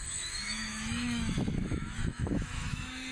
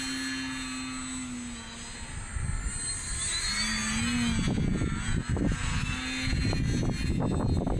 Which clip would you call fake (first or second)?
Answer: first